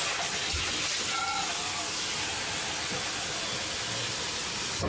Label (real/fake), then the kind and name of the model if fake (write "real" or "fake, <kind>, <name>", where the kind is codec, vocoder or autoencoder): real